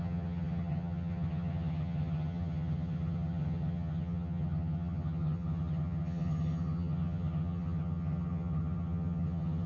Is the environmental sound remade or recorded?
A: remade